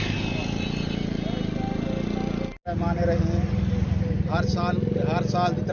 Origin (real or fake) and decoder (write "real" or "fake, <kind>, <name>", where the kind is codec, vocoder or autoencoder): real